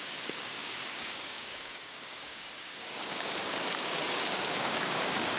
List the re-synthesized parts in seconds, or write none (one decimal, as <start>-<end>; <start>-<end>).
0.0-5.4